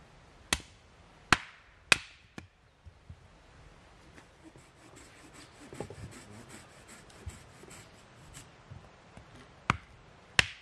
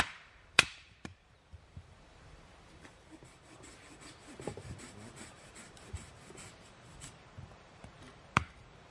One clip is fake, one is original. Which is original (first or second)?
first